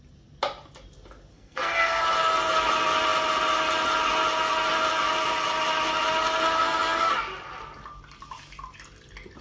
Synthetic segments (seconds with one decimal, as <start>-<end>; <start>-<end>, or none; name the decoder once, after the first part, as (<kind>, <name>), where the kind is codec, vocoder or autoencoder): 1.3-2.0 (codec, SNAC)